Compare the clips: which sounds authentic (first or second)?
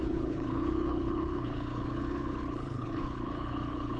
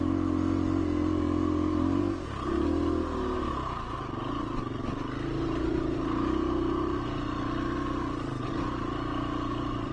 second